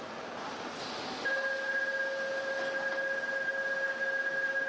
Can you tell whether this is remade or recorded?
recorded